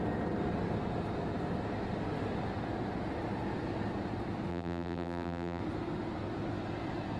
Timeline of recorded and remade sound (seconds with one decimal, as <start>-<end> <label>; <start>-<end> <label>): 0.0-4.5 recorded; 4.5-5.6 remade; 5.6-7.2 recorded